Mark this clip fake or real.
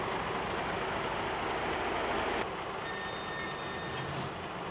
real